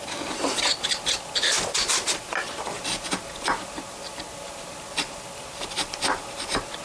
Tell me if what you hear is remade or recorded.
recorded